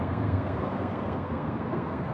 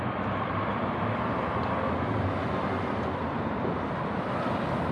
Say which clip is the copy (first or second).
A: first